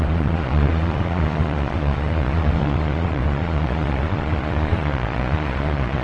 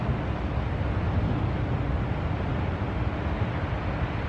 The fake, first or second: first